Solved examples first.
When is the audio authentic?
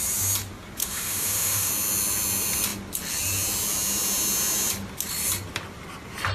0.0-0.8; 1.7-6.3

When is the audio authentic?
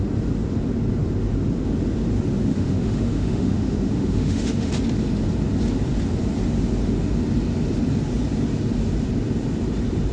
0.0-2.5; 4.7-10.1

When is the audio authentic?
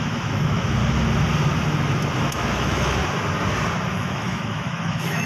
0.8-2.2; 3.0-3.8